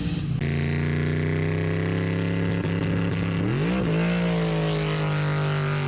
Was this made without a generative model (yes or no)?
yes